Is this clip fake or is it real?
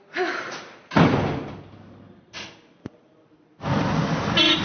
real